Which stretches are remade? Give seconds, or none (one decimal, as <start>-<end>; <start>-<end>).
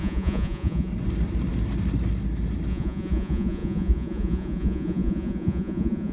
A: 0.0-0.9; 2.7-6.1